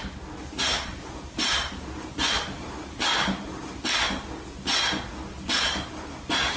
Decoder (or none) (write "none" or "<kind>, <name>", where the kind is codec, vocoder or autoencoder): none